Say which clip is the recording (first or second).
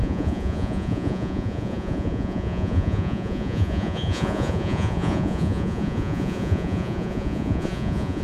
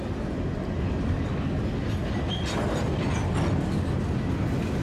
second